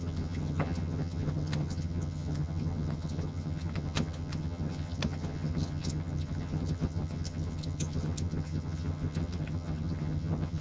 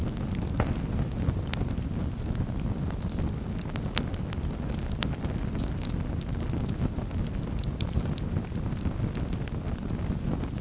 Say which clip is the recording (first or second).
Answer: second